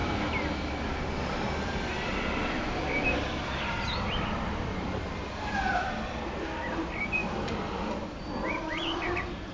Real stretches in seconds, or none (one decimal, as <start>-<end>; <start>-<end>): 0.0-0.7; 7.2-8.1